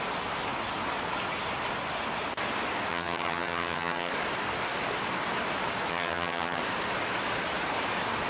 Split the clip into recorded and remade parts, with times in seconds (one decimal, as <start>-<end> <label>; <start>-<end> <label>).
0.0-2.9 recorded; 2.9-4.1 remade; 4.1-5.9 recorded; 5.9-6.6 remade; 6.6-8.3 recorded